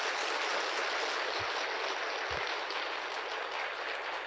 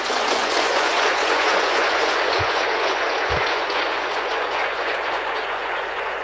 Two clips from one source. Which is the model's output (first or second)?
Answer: second